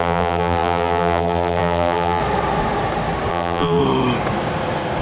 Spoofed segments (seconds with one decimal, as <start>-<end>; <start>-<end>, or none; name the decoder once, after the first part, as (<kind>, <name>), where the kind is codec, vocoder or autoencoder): 0.0-2.2 (vocoder, BigVGAN v2); 3.3-3.8